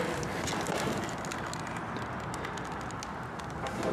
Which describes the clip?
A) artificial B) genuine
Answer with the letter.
B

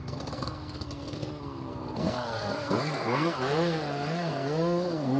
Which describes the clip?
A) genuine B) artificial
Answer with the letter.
B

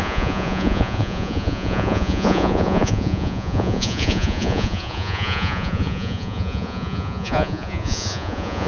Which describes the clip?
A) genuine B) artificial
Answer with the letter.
B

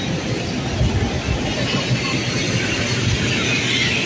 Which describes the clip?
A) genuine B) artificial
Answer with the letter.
A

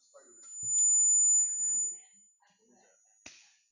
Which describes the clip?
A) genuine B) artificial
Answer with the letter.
A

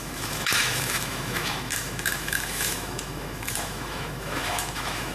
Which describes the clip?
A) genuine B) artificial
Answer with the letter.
B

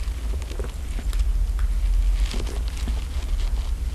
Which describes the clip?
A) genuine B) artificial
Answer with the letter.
A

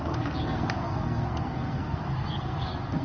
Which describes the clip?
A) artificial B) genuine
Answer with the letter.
A